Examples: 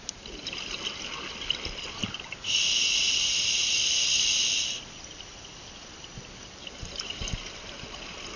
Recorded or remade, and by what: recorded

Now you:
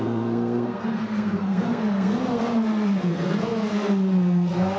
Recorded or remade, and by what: remade, codec, SNAC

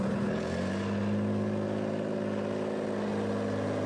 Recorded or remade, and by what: recorded